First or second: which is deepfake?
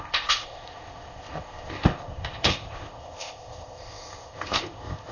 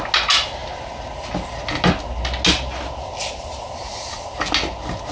first